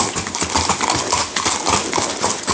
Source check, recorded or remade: recorded